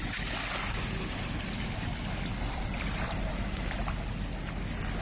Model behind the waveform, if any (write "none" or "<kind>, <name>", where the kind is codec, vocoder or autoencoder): none